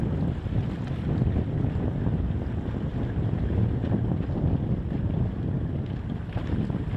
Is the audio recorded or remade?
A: recorded